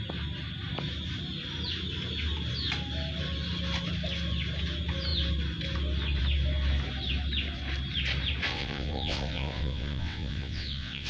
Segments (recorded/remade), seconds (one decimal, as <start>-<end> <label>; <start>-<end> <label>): 0.0-8.5 recorded; 8.5-11.1 remade

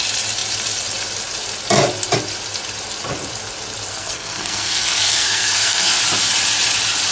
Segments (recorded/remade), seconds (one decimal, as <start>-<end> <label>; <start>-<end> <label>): 0.0-3.9 recorded; 3.9-6.0 remade; 6.0-7.1 recorded

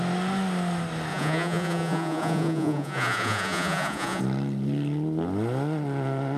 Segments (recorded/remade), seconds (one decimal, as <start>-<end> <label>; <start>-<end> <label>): 0.0-1.1 recorded; 1.1-4.2 remade; 4.2-6.4 recorded

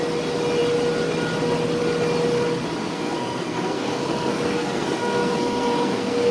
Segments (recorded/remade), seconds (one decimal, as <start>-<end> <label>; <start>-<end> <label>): 0.0-2.8 recorded; 2.8-6.3 remade

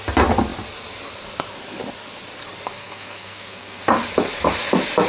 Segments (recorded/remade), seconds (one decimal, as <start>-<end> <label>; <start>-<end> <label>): 0.0-2.8 recorded; 2.8-3.8 remade; 3.8-5.1 recorded

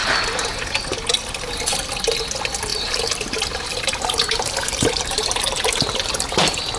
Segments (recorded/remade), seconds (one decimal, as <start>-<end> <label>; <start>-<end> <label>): 0.0-2.7 recorded; 2.7-5.4 remade; 5.4-6.8 recorded

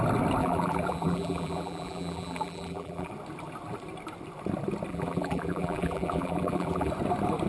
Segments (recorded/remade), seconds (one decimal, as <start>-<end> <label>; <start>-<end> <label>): 0.0-0.4 recorded; 0.4-3.1 remade; 3.1-4.9 recorded; 4.9-6.9 remade; 6.9-7.5 recorded